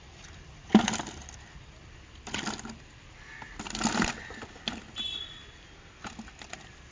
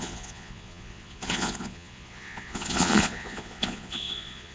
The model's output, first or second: second